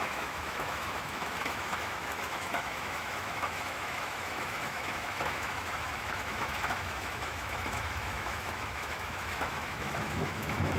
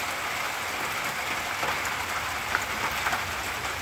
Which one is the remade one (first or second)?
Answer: first